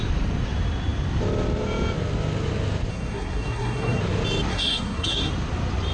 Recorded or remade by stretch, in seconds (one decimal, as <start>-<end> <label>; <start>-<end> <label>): 0.0-2.9 recorded; 2.9-4.0 remade; 4.0-4.5 recorded; 4.5-5.3 remade; 5.3-5.9 recorded

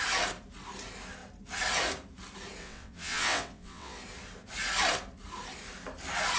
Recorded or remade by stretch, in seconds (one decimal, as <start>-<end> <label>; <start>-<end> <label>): 0.0-2.6 recorded; 2.6-4.0 remade; 4.0-6.4 recorded

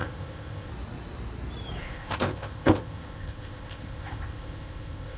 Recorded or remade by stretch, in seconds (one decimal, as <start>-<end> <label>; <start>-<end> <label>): 0.0-0.7 remade; 0.7-1.8 recorded; 1.8-5.2 remade

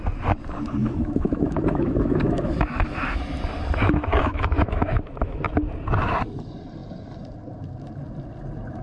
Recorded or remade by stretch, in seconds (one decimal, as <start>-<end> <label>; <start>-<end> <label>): 0.0-0.8 recorded; 0.8-3.2 remade; 3.2-4.2 recorded; 4.2-5.4 remade; 5.4-8.8 recorded